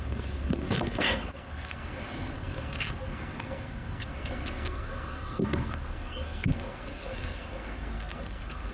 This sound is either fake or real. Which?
fake